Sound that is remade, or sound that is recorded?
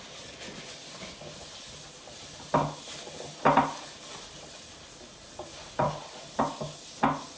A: recorded